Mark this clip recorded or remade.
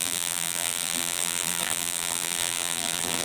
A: remade